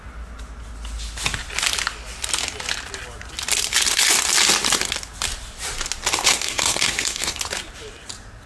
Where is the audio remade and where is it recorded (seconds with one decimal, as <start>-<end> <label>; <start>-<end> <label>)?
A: 0.0-6.2 recorded; 6.2-7.4 remade; 7.4-8.5 recorded

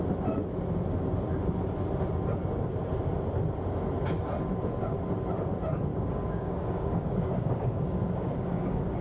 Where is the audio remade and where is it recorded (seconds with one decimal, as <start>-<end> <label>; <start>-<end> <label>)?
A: 0.0-5.9 recorded; 5.9-9.0 remade

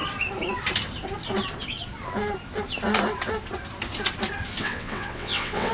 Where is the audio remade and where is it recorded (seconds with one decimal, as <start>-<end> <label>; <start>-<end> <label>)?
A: 0.0-4.6 recorded; 4.6-5.7 remade

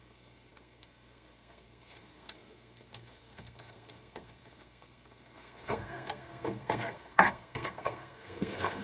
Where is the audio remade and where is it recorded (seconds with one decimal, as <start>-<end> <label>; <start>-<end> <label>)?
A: 0.0-8.8 remade

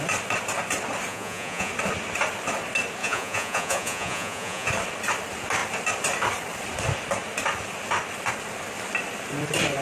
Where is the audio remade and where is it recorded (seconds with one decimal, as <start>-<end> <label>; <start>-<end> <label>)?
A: 0.0-1.1 recorded; 1.1-1.7 remade; 1.7-3.0 recorded; 3.0-4.7 remade; 4.7-9.8 recorded